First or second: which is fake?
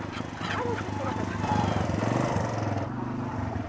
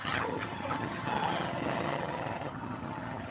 second